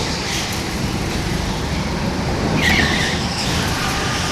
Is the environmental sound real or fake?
real